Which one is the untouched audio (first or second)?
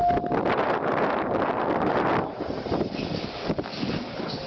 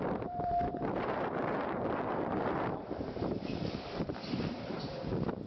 first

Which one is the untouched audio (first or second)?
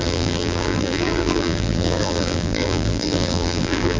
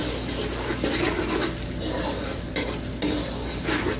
second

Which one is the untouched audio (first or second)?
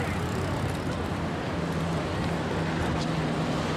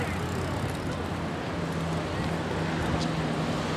second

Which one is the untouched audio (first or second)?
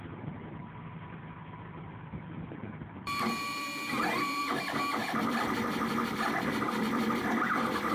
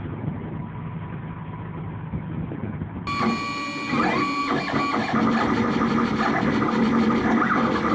second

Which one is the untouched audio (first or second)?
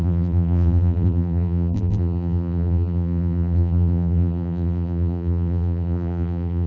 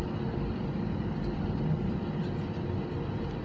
second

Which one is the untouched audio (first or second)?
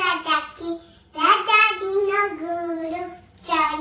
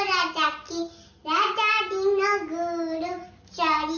second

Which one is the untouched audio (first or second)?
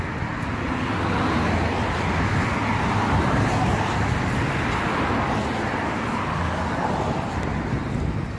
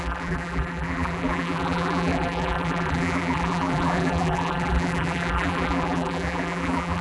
first